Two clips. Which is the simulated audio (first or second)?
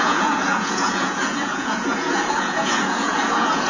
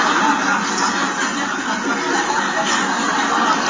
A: first